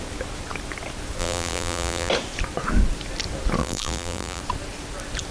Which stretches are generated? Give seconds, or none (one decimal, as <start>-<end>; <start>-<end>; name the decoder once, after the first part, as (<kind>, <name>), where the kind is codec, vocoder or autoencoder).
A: 1.2-2.1 (vocoder, BigVGAN v2); 3.6-4.4